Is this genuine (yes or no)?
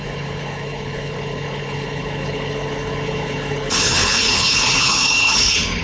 no